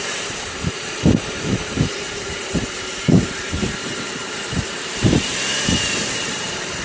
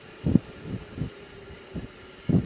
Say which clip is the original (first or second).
second